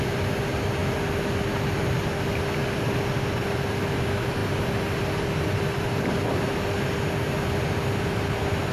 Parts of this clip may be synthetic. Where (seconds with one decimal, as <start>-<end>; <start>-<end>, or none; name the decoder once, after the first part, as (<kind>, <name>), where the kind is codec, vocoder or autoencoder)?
none